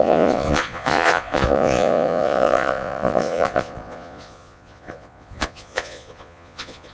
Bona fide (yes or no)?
no